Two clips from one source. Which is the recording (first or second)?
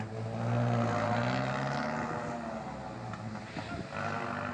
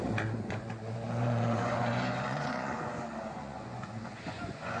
first